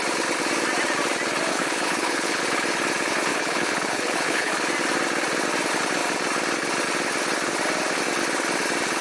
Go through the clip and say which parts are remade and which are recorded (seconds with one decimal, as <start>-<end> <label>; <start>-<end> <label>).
0.0-1.5 recorded; 1.5-2.4 remade; 2.4-3.3 recorded; 3.3-4.5 remade; 4.5-9.0 recorded